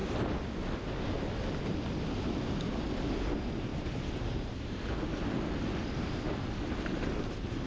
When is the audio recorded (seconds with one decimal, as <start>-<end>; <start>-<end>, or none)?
0.0-3.7; 4.8-7.7

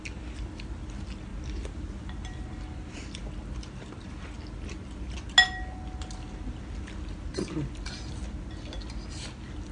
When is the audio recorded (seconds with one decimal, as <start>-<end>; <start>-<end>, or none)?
0.0-9.7

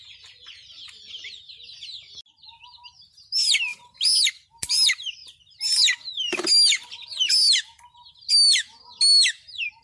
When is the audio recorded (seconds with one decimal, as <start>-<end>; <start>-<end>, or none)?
0.0-9.8

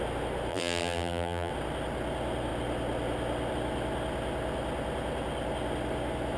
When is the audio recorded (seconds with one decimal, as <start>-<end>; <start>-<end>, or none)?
0.0-0.5; 1.5-6.4

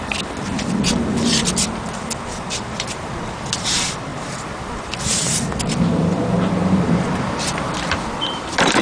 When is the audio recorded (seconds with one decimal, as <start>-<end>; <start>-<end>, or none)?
none

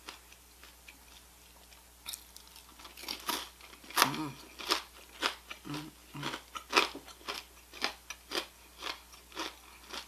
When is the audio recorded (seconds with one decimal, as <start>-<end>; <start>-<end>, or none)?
0.0-10.1

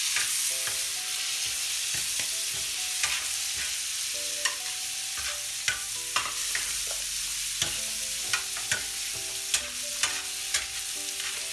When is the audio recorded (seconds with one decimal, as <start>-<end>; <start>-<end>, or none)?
0.0-11.5